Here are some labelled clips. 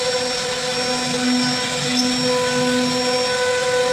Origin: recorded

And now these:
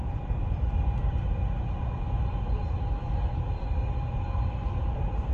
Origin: recorded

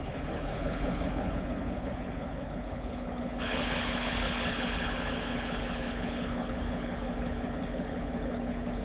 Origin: remade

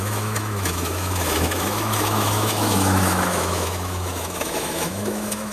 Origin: remade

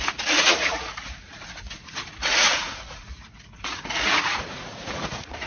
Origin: remade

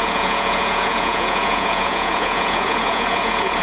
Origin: remade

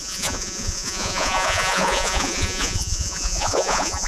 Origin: remade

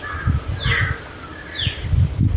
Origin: recorded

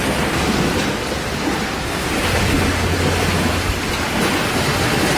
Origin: recorded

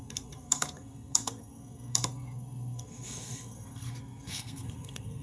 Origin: remade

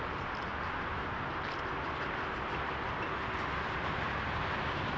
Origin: recorded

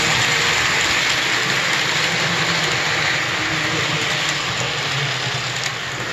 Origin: recorded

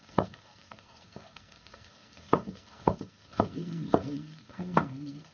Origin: remade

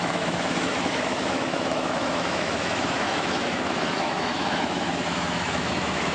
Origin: remade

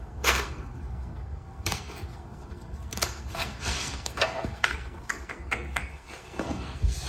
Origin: remade